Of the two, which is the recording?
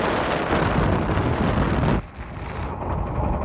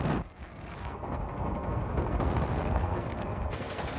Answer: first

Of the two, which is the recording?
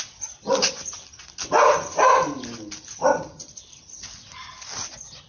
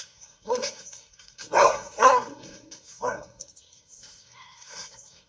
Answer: first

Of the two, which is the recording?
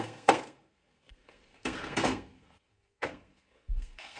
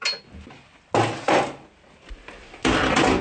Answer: second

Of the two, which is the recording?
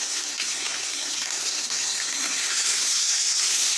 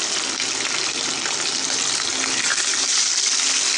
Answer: second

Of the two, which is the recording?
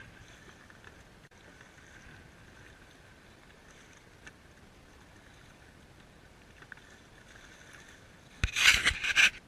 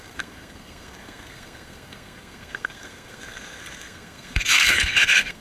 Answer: first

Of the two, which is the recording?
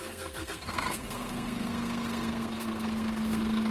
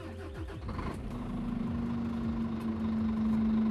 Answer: second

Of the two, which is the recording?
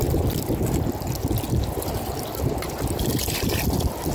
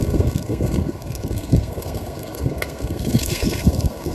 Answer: first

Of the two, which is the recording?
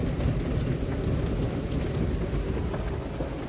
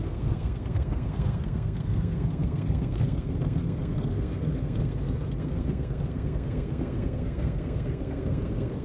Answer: first